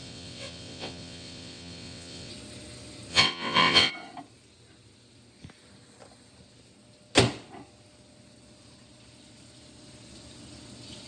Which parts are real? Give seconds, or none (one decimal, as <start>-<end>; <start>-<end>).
2.3-3.1; 3.9-11.1